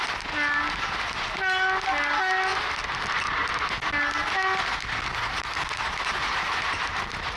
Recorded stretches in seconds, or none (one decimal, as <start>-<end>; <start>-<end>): 0.0-7.4